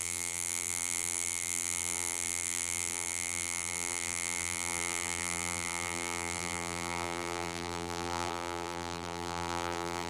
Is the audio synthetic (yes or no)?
yes